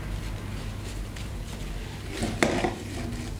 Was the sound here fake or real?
real